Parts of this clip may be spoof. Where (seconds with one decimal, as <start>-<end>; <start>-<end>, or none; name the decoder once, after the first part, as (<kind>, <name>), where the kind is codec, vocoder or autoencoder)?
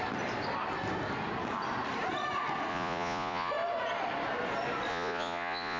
2.7-3.5 (vocoder, Vocos); 4.9-5.8